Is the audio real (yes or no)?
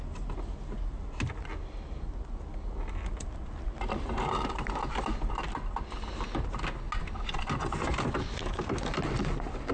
yes